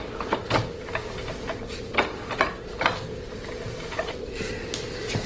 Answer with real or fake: real